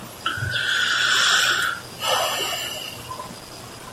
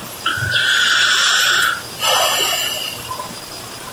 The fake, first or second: second